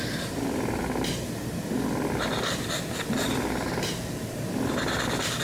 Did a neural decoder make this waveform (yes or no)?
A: no